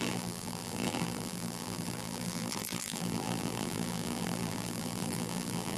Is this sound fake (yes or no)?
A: yes